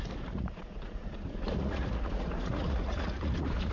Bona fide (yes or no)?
no